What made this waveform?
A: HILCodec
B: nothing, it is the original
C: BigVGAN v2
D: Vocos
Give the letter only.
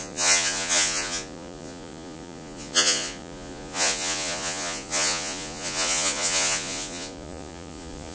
D